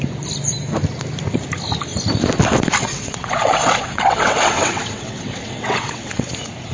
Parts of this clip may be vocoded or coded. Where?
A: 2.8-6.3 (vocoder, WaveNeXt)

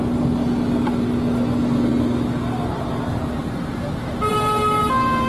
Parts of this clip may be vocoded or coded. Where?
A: 4.3-5.3 (vocoder, BigVGAN v2)

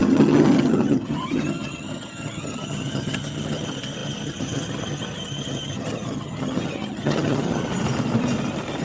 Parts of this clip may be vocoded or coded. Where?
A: 0.0-7.6 (vocoder, HiFi-GAN)

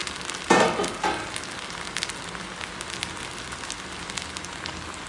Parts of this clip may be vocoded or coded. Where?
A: none

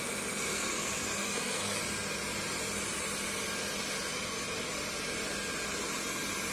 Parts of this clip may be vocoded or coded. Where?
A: 0.5-1.8 (codec, SNAC)

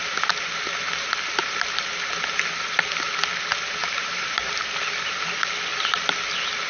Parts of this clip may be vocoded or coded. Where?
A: 3.8-4.7 (vocoder, BigVGAN v2)

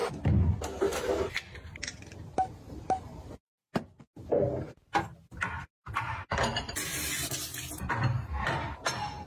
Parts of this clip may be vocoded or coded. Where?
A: none

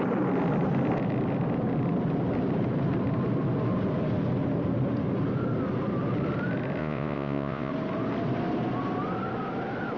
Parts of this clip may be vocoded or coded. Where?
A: 6.8-7.7 (vocoder, Vocos)